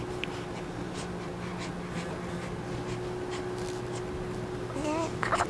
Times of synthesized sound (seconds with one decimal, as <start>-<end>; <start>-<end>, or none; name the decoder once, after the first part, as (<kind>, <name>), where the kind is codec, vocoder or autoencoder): none